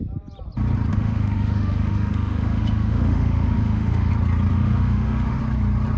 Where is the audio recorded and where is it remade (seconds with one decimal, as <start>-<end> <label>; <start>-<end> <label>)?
0.0-0.9 recorded; 0.9-4.1 remade; 4.1-4.5 recorded; 4.5-5.4 remade; 5.4-6.0 recorded